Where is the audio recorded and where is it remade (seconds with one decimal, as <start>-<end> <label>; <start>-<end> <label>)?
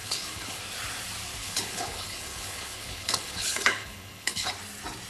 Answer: 0.0-0.6 remade; 0.6-1.4 recorded; 1.4-4.5 remade; 4.5-5.1 recorded